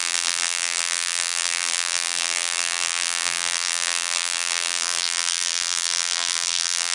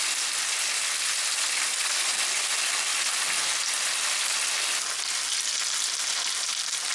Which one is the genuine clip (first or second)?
second